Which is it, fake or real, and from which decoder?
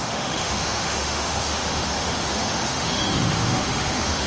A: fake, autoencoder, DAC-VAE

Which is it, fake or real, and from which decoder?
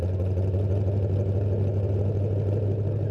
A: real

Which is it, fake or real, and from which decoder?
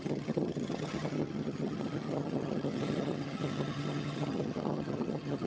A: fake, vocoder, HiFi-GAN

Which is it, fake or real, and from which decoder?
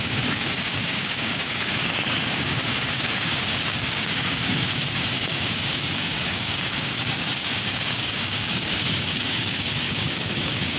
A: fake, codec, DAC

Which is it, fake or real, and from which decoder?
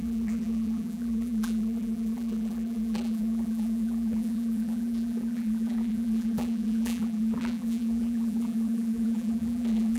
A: fake, vocoder, BigVGAN v2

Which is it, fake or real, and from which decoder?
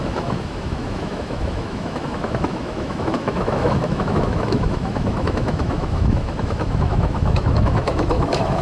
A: fake, autoencoder, DAC-VAE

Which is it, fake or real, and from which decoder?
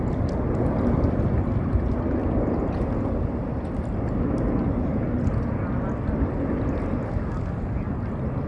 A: real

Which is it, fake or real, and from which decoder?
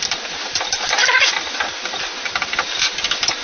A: real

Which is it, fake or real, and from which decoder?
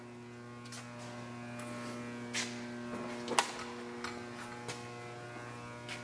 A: real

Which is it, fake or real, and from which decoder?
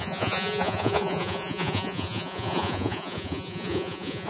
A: fake, vocoder, Vocos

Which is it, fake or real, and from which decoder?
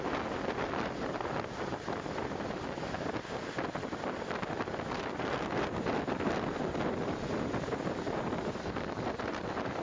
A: real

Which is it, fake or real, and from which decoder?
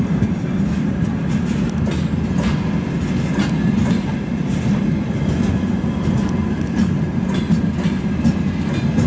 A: real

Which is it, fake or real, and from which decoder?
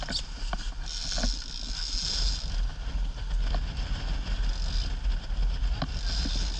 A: real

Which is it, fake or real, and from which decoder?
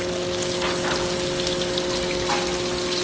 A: real